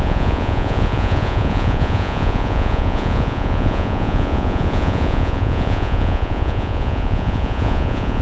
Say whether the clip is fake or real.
fake